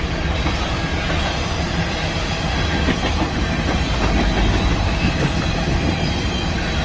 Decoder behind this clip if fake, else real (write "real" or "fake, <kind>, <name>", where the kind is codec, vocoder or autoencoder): real